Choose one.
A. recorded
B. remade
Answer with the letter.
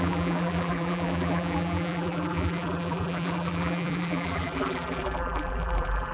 B